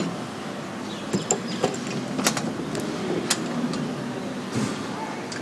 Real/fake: real